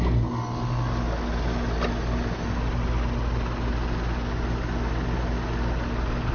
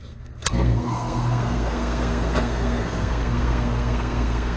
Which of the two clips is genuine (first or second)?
first